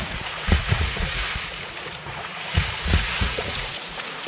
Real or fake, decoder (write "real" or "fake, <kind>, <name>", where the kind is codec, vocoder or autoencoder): fake, vocoder, Vocos